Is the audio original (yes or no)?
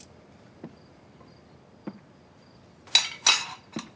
yes